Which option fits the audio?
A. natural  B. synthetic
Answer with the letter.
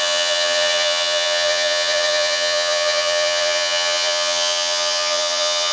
B